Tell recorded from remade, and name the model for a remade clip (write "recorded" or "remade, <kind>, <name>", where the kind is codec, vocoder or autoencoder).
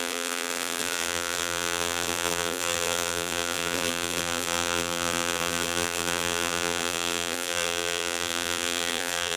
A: remade, vocoder, BigVGAN v2